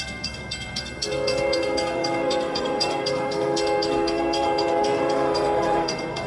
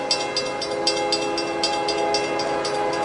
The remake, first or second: first